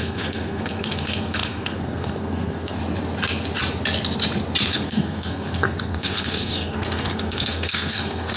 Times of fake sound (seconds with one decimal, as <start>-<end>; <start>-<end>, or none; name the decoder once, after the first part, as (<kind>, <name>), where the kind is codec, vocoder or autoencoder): 0.0-2.8 (codec, SNAC); 4.7-8.4

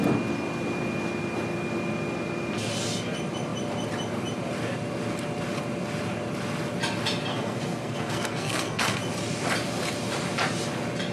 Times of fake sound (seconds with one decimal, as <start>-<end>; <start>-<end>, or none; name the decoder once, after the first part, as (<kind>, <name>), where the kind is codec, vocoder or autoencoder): 7.3-9.0 (codec, SNAC)

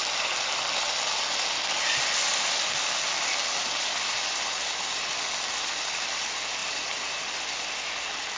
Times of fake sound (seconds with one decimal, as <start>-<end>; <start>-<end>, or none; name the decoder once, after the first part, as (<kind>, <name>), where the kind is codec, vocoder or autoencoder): none

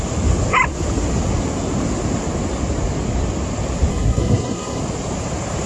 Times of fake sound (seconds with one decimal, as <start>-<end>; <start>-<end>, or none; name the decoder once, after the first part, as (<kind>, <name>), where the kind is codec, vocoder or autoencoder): 3.9-4.8 (codec, SNAC)

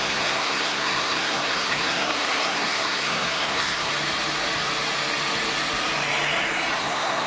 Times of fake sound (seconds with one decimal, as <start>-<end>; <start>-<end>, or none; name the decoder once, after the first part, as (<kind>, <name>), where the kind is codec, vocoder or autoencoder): 0.0-3.9 (codec, SNAC); 6.8-7.3

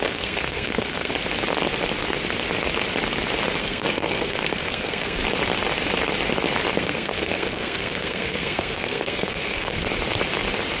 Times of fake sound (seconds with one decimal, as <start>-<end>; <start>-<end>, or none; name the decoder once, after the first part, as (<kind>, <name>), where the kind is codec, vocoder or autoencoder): 0.0-1.1 (codec, SNAC); 3.6-5.2; 6.8-9.9

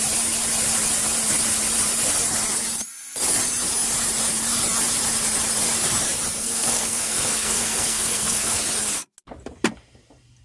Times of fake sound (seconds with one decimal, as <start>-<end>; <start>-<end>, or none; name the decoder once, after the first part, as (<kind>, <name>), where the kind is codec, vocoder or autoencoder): 6.4-8.6 (codec, SNAC)

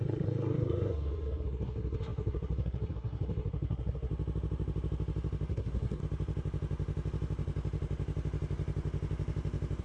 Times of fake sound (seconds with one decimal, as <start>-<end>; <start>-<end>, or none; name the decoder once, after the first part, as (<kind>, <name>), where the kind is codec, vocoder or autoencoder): 0.0-4.1 (codec, SNAC); 5.5-6.0